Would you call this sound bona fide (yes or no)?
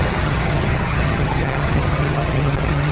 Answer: no